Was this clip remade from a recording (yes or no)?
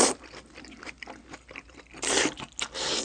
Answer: no